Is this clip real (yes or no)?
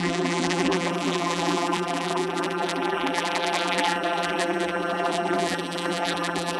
no